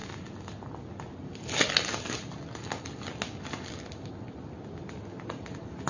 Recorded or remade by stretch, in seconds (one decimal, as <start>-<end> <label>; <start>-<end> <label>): 0.0-5.9 recorded